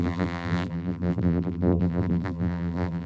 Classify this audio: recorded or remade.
remade